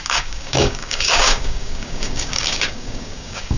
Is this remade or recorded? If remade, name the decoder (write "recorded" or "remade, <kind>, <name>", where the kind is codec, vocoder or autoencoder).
remade, codec, DAC